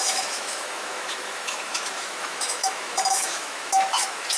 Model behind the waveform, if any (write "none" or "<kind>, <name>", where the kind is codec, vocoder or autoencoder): autoencoder, DAC-VAE